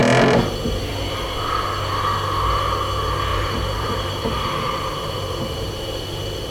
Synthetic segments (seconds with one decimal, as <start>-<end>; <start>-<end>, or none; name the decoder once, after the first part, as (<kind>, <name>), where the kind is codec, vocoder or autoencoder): 3.3-6.5 (vocoder, BigVGAN v2)